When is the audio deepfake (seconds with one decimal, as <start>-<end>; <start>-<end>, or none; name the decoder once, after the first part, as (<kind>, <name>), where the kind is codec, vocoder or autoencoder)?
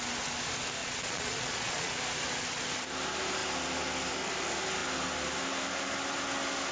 0.8-1.9 (vocoder, Vocos)